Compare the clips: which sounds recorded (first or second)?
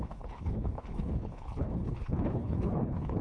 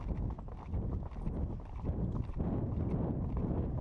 second